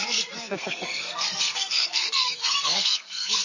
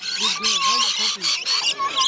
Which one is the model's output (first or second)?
first